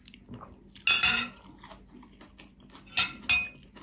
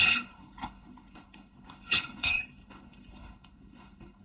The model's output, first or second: second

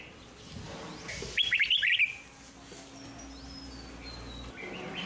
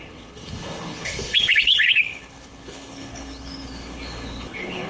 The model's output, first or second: second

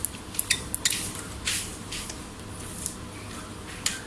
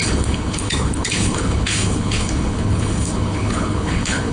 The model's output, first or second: second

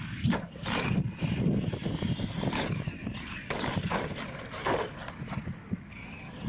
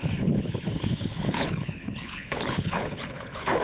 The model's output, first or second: second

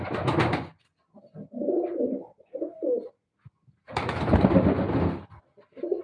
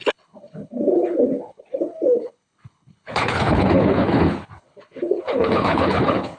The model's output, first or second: second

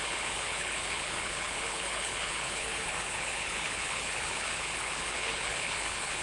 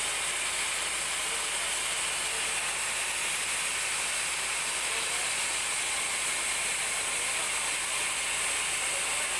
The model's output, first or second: first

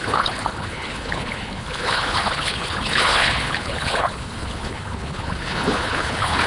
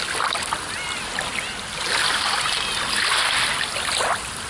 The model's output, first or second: first